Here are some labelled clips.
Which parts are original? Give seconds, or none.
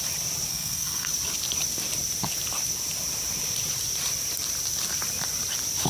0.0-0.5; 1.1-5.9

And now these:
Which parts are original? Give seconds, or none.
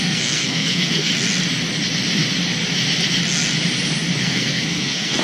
1.1-4.2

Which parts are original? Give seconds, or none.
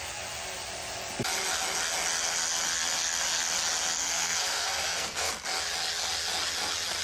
0.0-4.0; 5.3-7.0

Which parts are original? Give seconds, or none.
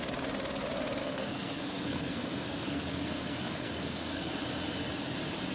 0.0-1.0; 4.3-5.5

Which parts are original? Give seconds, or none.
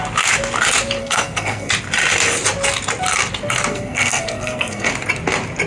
0.0-1.0; 1.7-3.7; 4.9-5.7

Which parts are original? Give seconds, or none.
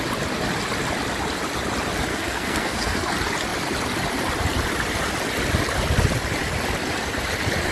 0.0-2.1; 3.1-7.7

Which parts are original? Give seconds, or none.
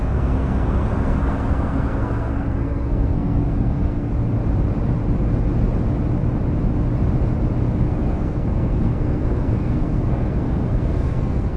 4.1-7.8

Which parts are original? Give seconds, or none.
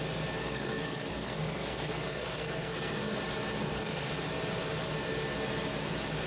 0.0-0.4; 3.2-3.6; 4.1-6.3